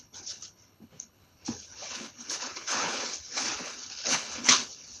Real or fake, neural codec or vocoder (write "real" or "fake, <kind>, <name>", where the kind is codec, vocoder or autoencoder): fake, codec, HILCodec